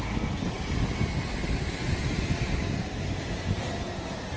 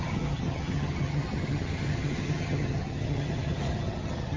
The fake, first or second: second